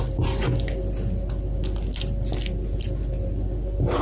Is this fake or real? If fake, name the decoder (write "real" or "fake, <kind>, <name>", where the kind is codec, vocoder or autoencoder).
real